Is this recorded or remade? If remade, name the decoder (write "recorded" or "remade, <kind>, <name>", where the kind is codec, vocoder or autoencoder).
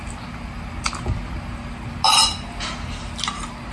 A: recorded